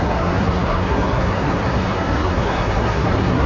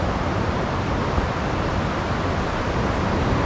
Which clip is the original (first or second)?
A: second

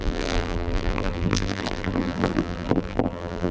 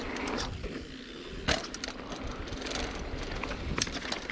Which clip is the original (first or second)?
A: second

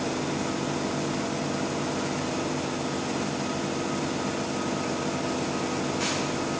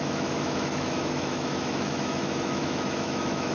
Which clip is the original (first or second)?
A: first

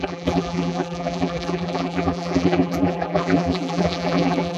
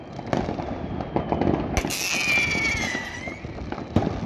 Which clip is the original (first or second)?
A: second